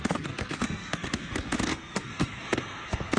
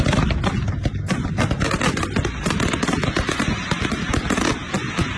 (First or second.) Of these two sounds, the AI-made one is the first